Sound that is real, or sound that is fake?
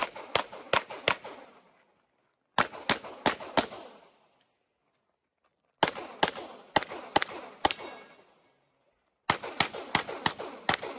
real